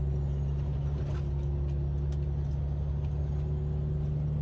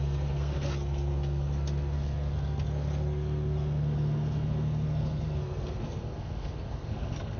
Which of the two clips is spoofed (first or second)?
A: second